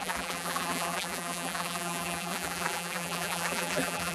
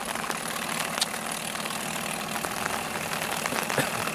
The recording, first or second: second